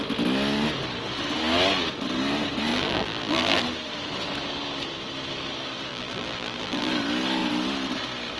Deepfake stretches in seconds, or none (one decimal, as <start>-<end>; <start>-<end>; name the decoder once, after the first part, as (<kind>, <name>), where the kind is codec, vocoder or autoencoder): 2.7-3.6 (vocoder, BigVGAN v2); 5.9-6.9